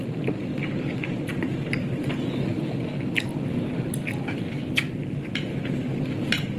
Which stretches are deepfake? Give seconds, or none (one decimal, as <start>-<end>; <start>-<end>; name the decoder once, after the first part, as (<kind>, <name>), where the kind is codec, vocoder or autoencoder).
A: 1.3-2.0 (vocoder, BigVGAN v2)